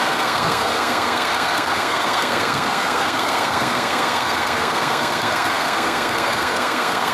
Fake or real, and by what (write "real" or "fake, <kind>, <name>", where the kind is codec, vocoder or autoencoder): fake, codec, SNAC